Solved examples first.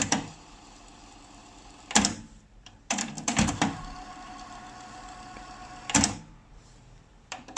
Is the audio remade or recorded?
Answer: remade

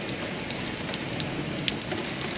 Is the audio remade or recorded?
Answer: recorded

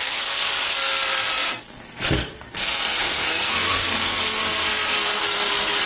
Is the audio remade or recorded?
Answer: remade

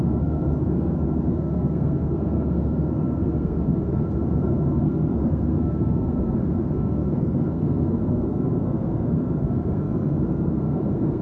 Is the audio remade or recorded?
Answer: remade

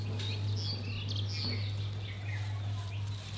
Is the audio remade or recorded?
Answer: recorded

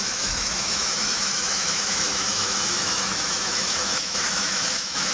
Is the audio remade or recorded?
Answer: remade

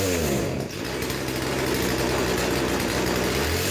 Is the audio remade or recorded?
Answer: recorded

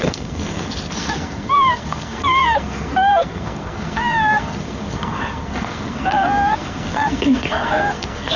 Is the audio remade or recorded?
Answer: remade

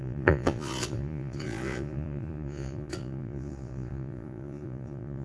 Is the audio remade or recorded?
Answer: remade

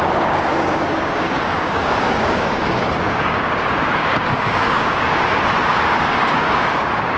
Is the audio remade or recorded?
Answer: remade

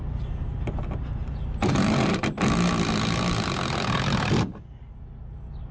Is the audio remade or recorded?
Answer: recorded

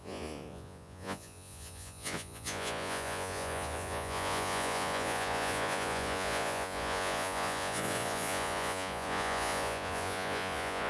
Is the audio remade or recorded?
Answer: remade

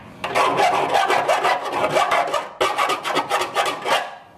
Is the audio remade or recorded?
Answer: recorded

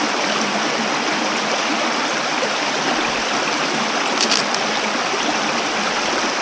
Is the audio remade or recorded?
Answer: recorded